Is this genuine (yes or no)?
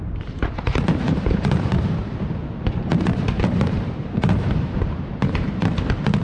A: no